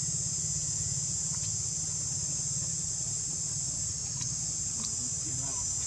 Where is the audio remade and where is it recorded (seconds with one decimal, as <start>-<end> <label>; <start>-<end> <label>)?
0.0-0.6 recorded; 0.6-1.2 remade; 1.2-5.9 recorded